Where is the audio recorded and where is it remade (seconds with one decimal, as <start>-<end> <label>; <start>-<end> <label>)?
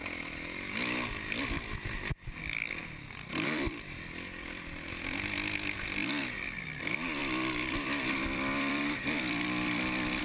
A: 0.0-1.4 remade; 1.4-2.8 recorded; 2.8-4.9 remade; 4.9-6.0 recorded; 6.0-6.8 remade; 6.8-7.2 recorded; 7.2-10.2 remade